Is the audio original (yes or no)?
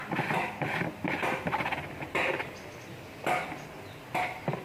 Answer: yes